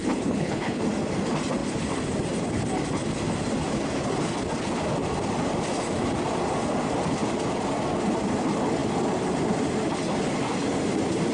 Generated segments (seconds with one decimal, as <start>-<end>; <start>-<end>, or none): 0.0-0.8